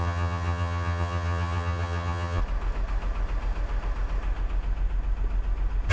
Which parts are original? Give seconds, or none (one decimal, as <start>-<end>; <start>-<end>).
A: 2.4-5.9